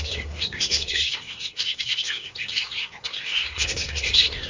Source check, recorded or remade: remade